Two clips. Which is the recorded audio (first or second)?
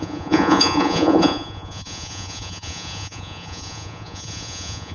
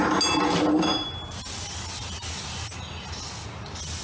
second